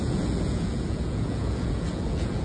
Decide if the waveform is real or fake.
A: fake